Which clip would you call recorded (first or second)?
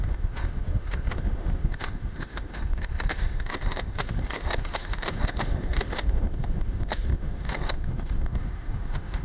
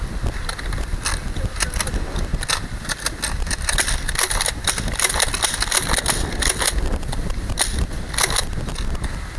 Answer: second